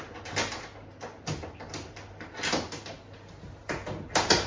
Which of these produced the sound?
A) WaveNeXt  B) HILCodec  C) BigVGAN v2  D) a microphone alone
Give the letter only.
D